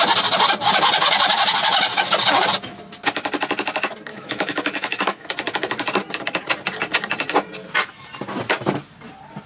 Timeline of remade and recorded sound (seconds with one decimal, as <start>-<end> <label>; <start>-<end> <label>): 0.0-4.1 recorded; 4.1-5.3 remade; 5.3-9.5 recorded